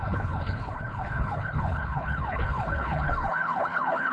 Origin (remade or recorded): remade